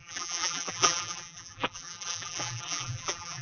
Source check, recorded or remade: remade